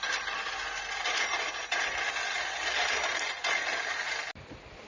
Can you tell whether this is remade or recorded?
recorded